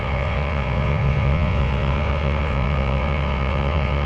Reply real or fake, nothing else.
fake